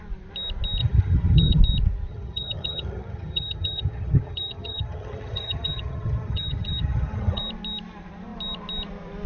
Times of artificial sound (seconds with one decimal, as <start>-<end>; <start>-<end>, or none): 0.8-1.6; 2.1-7.4